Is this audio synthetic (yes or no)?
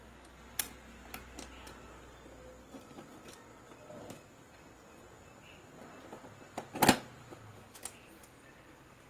no